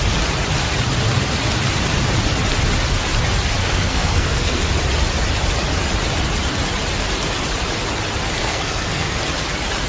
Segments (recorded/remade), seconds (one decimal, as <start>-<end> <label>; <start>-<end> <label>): 0.0-3.6 recorded; 3.6-4.6 remade; 4.6-8.4 recorded; 8.4-9.2 remade; 9.2-9.9 recorded